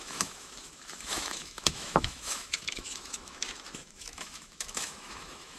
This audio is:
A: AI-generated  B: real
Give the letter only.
A